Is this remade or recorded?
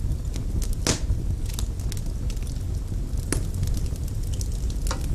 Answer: recorded